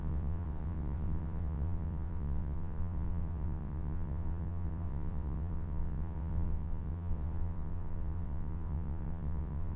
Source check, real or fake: fake